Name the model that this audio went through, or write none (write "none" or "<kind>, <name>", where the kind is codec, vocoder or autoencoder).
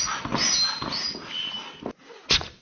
none